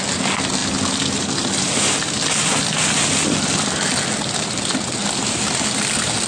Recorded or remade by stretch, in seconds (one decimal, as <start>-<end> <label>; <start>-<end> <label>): 0.0-6.3 recorded